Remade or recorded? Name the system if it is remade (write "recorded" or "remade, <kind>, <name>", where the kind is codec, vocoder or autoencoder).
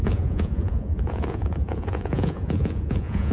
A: remade, vocoder, Vocos